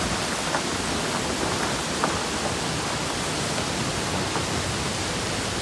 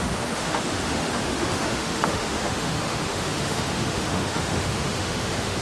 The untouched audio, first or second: first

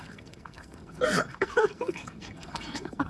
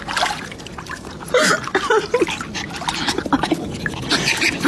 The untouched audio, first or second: second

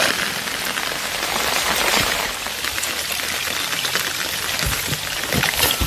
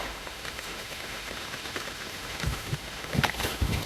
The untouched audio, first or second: first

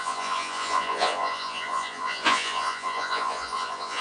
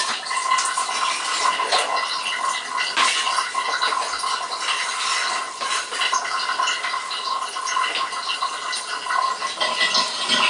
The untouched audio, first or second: second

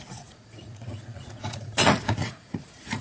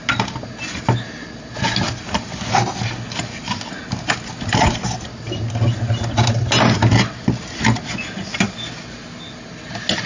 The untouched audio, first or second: second